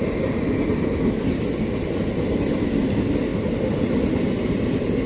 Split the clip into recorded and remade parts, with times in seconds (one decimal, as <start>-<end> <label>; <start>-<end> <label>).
0.0-5.1 recorded